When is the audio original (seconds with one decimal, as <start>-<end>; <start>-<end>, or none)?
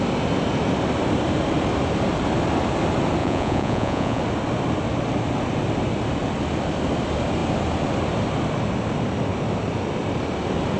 0.0-3.2; 4.2-10.8